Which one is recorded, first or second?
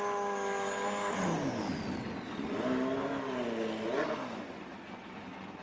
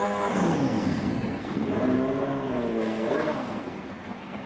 first